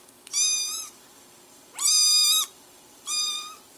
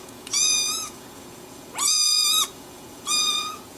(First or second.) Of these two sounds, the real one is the first